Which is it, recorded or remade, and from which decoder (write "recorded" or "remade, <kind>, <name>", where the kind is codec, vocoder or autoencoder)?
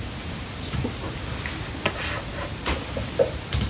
recorded